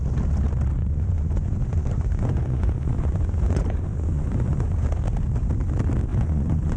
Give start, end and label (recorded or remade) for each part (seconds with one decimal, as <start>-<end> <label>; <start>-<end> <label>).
0.0-0.8 recorded; 0.8-4.9 remade; 4.9-6.1 recorded; 6.1-6.8 remade